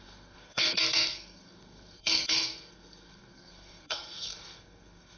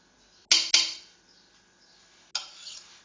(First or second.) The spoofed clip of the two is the first